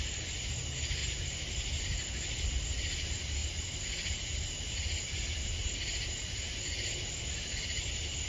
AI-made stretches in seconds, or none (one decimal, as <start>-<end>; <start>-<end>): 1.0-1.8